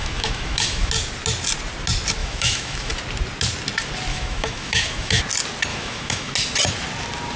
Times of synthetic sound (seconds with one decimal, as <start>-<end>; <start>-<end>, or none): 0.0-0.9; 2.2-2.9; 4.1-5.2; 5.7-6.3